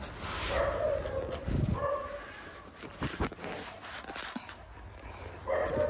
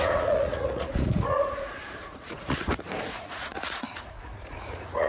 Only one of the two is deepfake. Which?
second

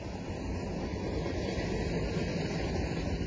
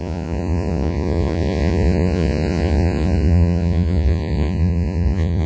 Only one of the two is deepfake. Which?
second